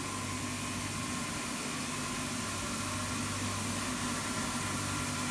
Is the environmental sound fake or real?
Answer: real